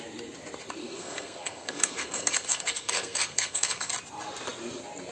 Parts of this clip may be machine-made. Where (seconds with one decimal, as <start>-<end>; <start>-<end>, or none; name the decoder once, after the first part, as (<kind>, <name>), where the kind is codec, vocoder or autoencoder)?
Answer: 0.8-3.9 (codec, SNAC)